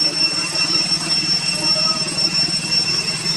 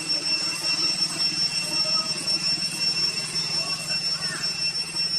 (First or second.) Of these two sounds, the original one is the second